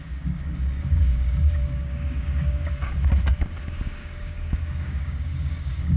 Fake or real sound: fake